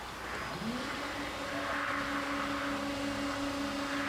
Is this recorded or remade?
recorded